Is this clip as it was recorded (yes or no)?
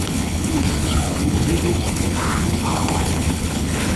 no